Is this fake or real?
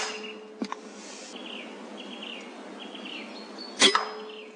real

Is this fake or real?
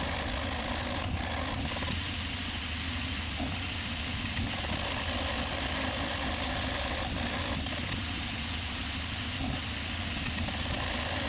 real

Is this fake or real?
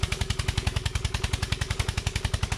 fake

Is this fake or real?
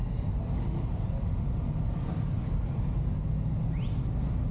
real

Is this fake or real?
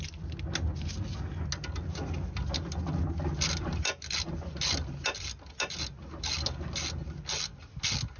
real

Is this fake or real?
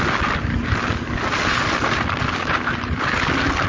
real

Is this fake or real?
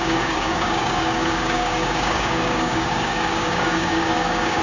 fake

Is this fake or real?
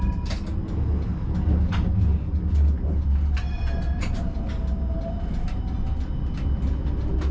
real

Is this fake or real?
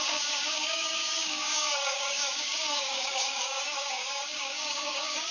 fake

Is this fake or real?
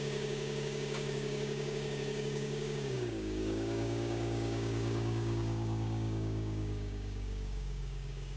fake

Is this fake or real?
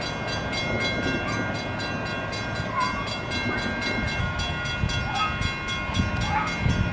real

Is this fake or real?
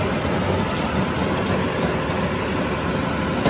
real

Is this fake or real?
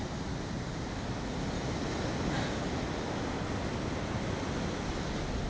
real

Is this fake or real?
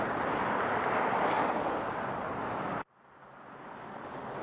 real